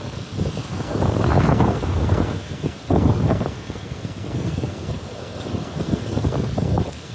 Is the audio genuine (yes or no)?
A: no